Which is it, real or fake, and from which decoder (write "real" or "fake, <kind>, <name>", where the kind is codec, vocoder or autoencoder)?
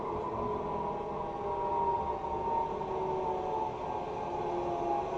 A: real